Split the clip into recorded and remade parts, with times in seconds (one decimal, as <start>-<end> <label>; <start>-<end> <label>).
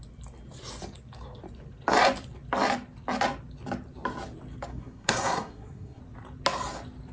0.0-4.7 recorded; 4.7-6.0 remade; 6.0-7.1 recorded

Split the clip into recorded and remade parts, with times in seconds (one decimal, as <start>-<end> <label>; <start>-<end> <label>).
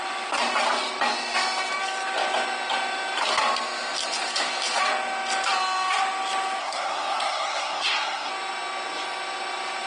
0.0-6.6 recorded; 6.6-8.3 remade; 8.3-9.9 recorded